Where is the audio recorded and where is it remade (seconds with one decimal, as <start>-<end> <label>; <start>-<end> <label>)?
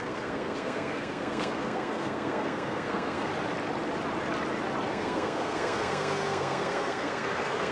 0.0-3.3 remade; 3.3-4.9 recorded; 4.9-7.7 remade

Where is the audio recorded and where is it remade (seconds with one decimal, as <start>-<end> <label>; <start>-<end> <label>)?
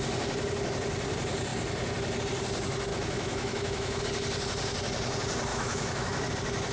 0.0-2.9 recorded; 2.9-4.0 remade; 4.0-5.5 recorded; 5.5-6.3 remade; 6.3-6.7 recorded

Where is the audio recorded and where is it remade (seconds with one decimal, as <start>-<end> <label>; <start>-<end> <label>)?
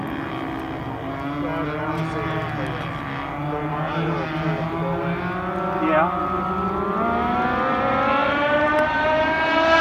0.0-8.2 recorded; 8.2-9.1 remade; 9.1-9.8 recorded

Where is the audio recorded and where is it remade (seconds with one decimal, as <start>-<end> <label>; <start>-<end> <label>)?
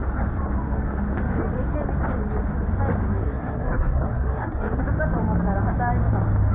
0.0-3.2 recorded; 3.2-4.8 remade; 4.8-6.5 recorded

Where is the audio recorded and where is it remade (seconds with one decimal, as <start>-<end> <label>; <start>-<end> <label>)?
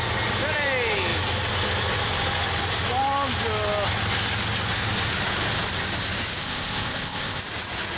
0.0-6.4 recorded; 6.4-7.4 remade; 7.4-8.0 recorded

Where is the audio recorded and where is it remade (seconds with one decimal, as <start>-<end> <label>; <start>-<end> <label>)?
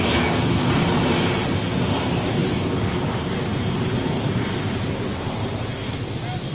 0.0-6.5 recorded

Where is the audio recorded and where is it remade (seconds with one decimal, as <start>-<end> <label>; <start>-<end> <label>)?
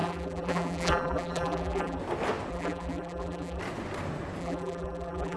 0.0-2.0 remade; 2.0-2.5 recorded; 2.5-3.6 remade; 3.6-4.4 recorded; 4.4-5.4 remade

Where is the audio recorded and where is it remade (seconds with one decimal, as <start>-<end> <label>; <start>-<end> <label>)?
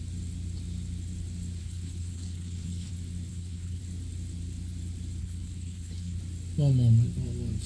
0.0-1.6 recorded; 1.6-2.9 remade; 2.9-3.3 recorded; 3.3-3.8 remade; 3.8-5.2 recorded; 5.2-6.2 remade; 6.2-7.7 recorded